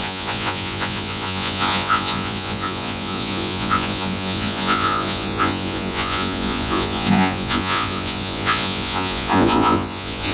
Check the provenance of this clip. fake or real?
fake